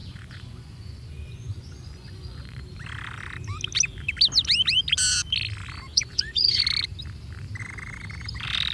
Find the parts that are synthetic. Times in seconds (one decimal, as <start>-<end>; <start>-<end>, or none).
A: 0.0-2.6; 5.9-6.6